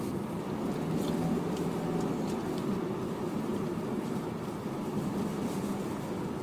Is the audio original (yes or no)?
yes